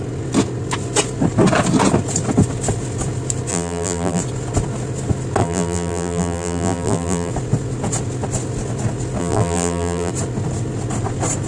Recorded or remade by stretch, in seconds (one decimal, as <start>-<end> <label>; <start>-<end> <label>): 0.0-3.5 recorded; 3.5-4.2 remade; 4.2-5.4 recorded; 5.4-7.3 remade; 7.3-9.2 recorded; 9.2-10.1 remade; 10.1-11.5 recorded